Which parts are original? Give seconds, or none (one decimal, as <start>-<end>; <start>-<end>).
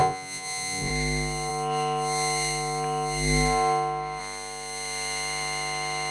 0.9-6.1